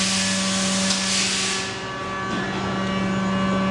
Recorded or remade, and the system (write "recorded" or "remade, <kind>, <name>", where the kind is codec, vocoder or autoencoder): recorded